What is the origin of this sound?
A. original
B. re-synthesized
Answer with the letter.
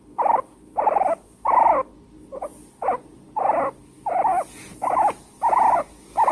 A